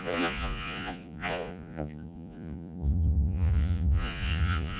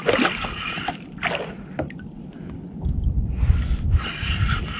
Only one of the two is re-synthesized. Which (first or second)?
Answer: first